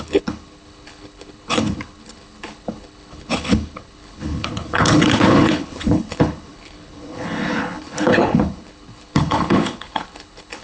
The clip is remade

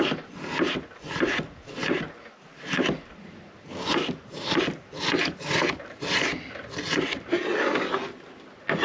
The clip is recorded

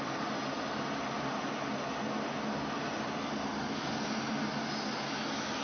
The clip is recorded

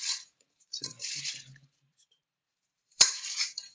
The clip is remade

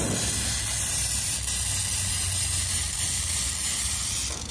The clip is recorded